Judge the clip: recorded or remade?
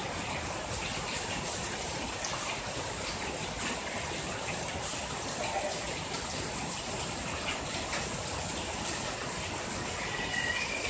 recorded